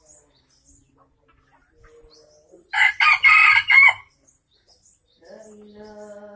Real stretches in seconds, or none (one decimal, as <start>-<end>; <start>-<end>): 0.0-6.4